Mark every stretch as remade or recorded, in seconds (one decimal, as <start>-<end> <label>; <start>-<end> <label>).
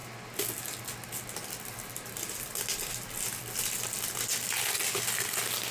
0.0-5.7 recorded